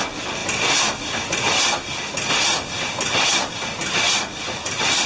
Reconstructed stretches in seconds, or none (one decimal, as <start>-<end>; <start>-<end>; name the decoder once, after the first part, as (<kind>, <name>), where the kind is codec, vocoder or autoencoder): 0.4-3.5 (vocoder, BigVGAN v2); 4.3-5.1